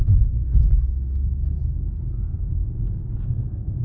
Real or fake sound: fake